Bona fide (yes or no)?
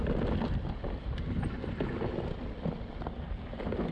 yes